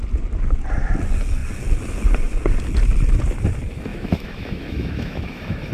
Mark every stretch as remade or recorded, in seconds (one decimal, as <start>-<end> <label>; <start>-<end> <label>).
0.0-3.9 recorded; 3.9-5.7 remade

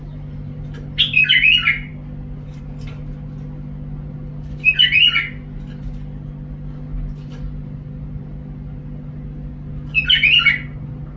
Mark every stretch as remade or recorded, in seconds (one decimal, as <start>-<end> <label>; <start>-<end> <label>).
0.0-11.2 recorded